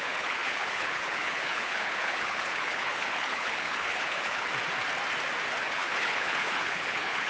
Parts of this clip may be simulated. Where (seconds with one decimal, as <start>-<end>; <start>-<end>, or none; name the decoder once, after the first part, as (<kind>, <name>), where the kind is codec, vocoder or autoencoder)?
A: 0.0-4.5 (codec, HILCodec); 5.6-7.3